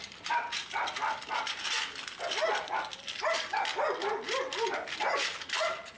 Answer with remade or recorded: recorded